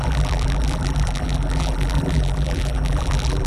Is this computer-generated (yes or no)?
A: yes